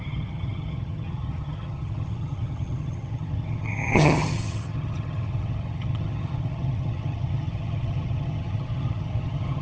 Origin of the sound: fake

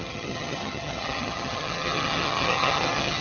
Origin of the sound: fake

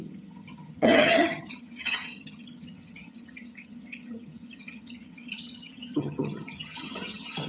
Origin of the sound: fake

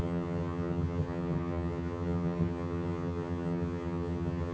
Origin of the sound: fake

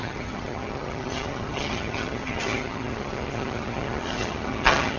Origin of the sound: fake